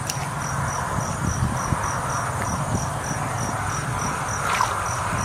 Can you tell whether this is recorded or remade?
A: recorded